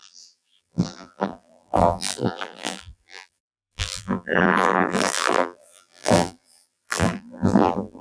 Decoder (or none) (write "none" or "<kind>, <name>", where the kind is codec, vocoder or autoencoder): vocoder, BigVGAN v2